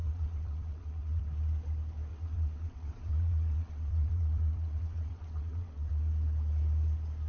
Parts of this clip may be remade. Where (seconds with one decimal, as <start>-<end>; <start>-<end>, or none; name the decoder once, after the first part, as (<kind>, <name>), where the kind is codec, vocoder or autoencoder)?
0.0-1.2 (vocoder, WaveNeXt); 2.1-5.9